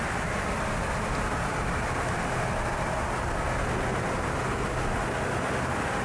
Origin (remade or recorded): recorded